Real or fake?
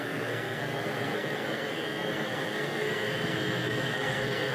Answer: fake